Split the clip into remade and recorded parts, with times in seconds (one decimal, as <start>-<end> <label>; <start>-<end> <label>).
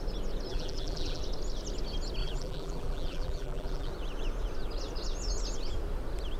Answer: 0.0-0.5 recorded; 0.5-1.2 remade; 1.2-2.2 recorded; 2.2-3.9 remade; 3.9-6.4 recorded